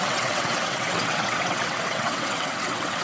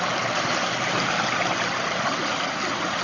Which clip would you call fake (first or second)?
first